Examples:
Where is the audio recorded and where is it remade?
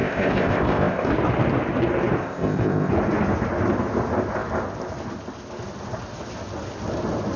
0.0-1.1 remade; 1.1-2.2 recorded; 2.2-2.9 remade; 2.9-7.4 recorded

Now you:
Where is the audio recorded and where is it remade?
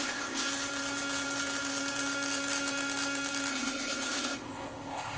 0.0-0.5 remade; 0.5-3.5 recorded; 3.5-5.2 remade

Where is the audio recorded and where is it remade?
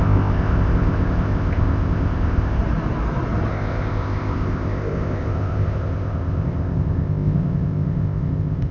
0.0-2.6 remade; 2.6-3.5 recorded; 3.5-8.7 remade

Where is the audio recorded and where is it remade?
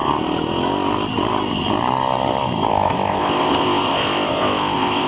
0.0-2.7 recorded; 2.7-5.1 remade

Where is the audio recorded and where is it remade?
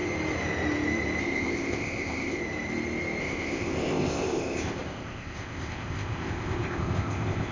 0.0-1.2 recorded; 1.2-2.4 remade; 2.4-3.2 recorded; 3.2-7.5 remade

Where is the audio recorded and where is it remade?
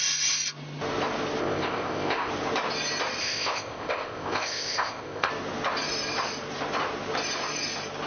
0.0-1.4 recorded; 1.4-2.3 remade; 2.3-3.2 recorded; 3.2-5.3 remade; 5.3-8.1 recorded